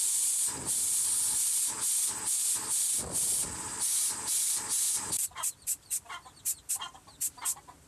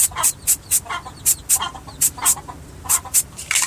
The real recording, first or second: second